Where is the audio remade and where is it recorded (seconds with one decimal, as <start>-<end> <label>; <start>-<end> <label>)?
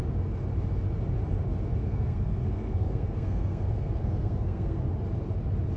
0.0-1.8 recorded; 1.8-4.8 remade; 4.8-5.8 recorded